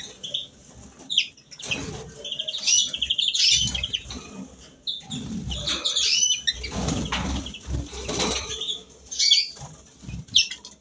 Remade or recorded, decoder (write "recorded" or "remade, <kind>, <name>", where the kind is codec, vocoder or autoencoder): recorded